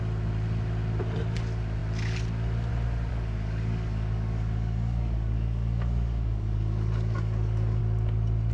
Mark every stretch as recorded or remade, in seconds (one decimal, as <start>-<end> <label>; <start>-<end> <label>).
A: 0.0-3.1 recorded; 3.1-7.8 remade; 7.8-8.5 recorded